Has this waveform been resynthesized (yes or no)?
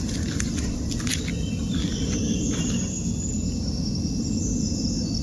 no